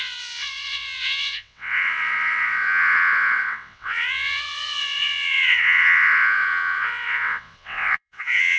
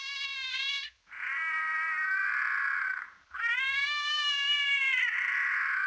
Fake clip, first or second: first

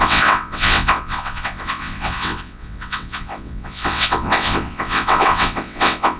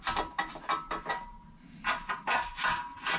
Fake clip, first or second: first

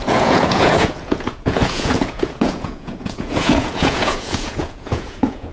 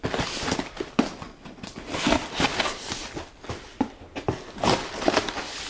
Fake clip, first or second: first